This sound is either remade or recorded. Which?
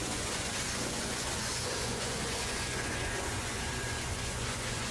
remade